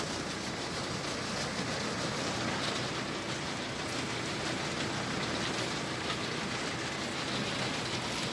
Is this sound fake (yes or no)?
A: no